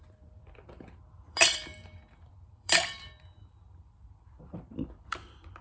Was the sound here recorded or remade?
remade